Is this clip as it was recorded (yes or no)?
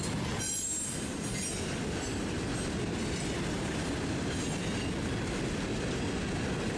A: yes